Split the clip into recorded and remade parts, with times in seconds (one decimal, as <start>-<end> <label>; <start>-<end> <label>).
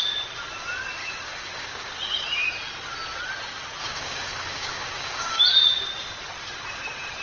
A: 0.0-1.0 recorded; 1.0-1.9 remade; 1.9-3.8 recorded; 3.8-5.4 remade; 5.4-7.2 recorded